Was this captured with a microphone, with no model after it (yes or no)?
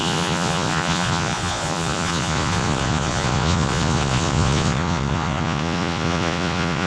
no